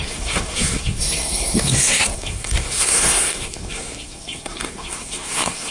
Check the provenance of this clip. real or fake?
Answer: fake